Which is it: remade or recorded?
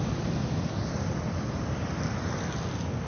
recorded